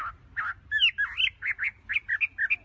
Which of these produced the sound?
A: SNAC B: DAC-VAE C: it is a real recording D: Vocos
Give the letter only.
C